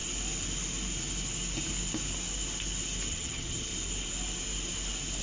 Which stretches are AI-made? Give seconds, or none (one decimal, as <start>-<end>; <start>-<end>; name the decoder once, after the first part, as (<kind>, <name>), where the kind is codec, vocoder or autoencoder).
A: 3.1-3.7 (vocoder, HiFi-GAN)